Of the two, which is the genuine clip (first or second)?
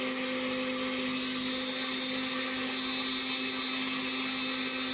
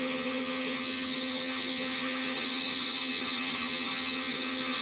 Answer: first